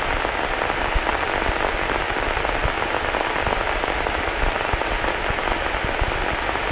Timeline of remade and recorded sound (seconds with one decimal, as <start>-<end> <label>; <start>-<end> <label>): 0.0-6.7 recorded